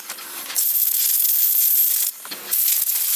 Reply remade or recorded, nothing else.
recorded